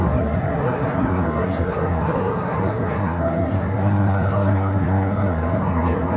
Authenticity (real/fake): fake